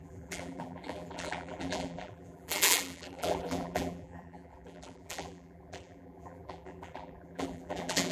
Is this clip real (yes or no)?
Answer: no